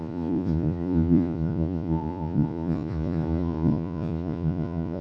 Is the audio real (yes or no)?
no